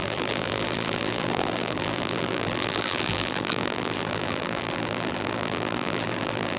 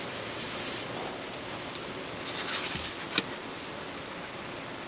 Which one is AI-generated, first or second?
first